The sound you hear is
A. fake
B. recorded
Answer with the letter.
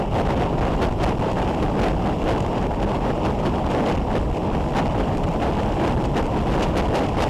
B